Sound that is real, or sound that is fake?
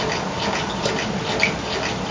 real